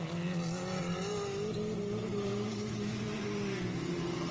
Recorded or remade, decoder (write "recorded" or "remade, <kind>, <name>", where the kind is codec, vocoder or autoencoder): recorded